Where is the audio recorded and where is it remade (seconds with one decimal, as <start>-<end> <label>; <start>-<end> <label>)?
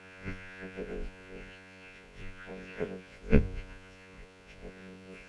0.0-5.3 remade